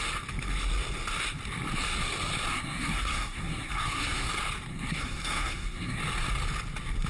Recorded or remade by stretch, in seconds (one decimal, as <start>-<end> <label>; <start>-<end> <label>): 0.0-2.5 recorded; 2.5-4.3 remade; 4.3-4.7 recorded; 4.7-6.0 remade; 6.0-7.1 recorded